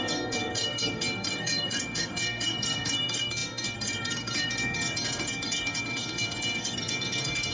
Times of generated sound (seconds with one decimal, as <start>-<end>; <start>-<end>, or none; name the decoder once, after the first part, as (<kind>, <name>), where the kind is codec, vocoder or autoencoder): 0.0-7.5 (codec, SNAC)